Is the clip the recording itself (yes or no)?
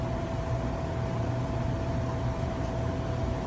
yes